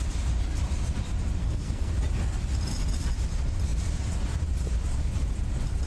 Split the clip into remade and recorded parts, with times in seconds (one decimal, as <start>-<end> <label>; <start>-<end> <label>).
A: 0.0-1.4 recorded; 1.4-1.9 remade; 1.9-5.9 recorded